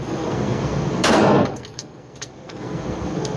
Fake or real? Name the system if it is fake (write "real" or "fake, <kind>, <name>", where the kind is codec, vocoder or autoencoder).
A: fake, codec, SNAC